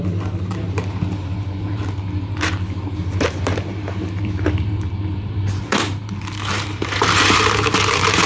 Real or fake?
fake